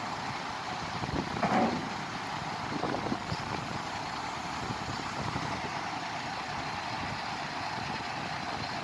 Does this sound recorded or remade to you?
recorded